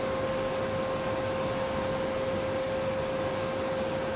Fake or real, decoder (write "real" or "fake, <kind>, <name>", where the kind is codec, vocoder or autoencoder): real